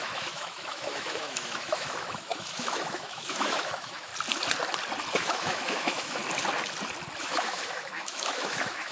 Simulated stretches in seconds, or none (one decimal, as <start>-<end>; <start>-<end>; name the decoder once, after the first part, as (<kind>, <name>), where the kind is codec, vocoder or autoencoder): 0.0-4.1 (autoencoder, DAC-VAE); 5.1-6.2; 7.2-8.9